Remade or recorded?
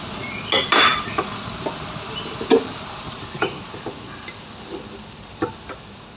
recorded